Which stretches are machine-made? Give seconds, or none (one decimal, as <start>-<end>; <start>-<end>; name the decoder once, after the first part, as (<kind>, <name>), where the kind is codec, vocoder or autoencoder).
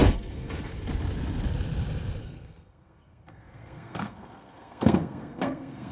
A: 0.0-0.7 (codec, SNAC); 2.2-5.9